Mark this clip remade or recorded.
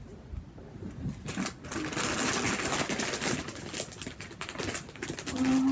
recorded